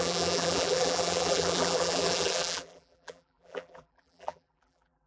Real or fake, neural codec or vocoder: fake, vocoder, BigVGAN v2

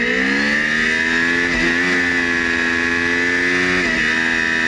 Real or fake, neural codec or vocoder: real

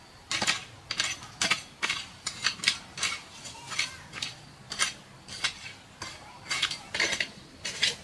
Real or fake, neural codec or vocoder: real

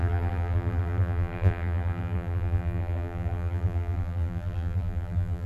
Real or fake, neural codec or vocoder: fake, vocoder, BigVGAN v2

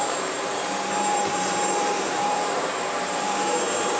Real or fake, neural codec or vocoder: fake, vocoder, BigVGAN v2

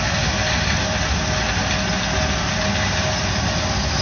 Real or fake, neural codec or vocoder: real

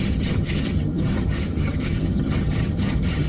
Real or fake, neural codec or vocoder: fake, vocoder, HiFi-GAN